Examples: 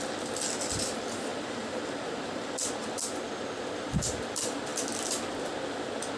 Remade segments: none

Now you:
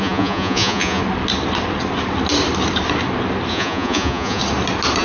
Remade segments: 0.0-1.0 (vocoder, Vocos); 3.5-4.4